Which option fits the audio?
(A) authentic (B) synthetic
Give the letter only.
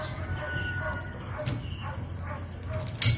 A